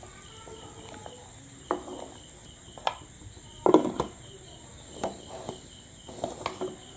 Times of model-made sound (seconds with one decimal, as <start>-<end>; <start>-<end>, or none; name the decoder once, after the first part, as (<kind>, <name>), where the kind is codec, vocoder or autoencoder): none